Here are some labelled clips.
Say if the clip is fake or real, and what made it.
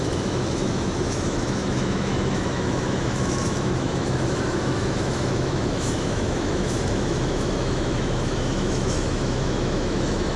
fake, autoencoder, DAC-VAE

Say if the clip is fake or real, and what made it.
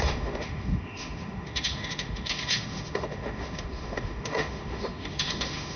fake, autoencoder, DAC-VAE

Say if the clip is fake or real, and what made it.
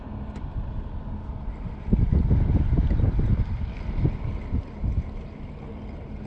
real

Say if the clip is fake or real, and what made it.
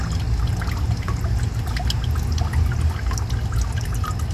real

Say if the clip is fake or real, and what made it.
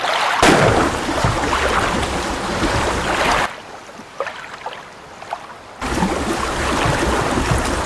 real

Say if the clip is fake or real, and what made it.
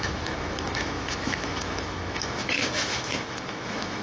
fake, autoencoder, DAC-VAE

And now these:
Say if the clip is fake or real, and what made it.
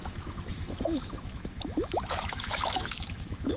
fake, autoencoder, DAC-VAE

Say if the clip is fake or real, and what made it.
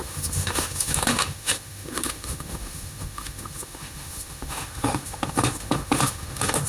fake, autoencoder, DAC-VAE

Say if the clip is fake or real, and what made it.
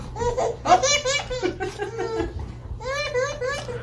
real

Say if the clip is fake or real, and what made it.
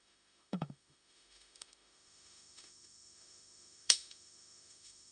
fake, autoencoder, DAC-VAE